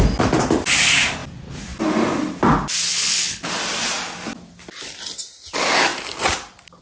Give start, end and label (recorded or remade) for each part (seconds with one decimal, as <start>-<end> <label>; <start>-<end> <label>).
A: 0.0-2.9 recorded; 2.9-3.5 remade; 3.5-6.8 recorded